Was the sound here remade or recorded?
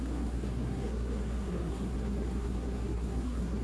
remade